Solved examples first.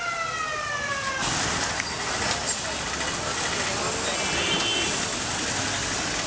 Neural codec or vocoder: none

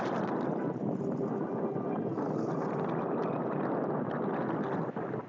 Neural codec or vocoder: none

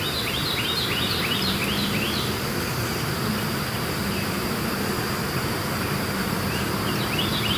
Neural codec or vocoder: vocoder, BigVGAN v2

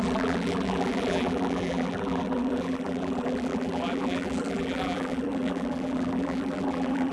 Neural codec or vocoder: vocoder, BigVGAN v2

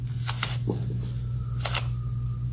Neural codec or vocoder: none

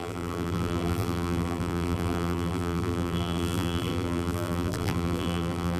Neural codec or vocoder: vocoder, BigVGAN v2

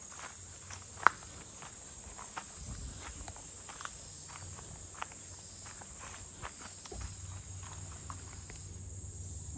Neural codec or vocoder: none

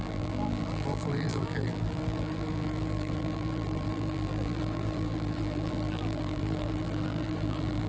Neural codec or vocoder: vocoder, BigVGAN v2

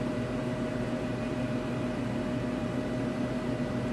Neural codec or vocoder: vocoder, BigVGAN v2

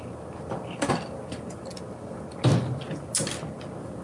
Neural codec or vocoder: none